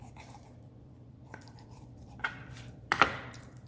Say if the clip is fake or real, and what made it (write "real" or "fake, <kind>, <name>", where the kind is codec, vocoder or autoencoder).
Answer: fake, vocoder, BigVGAN v2